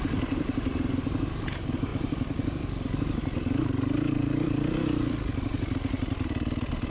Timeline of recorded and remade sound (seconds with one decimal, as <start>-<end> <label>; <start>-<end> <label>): 0.0-6.9 remade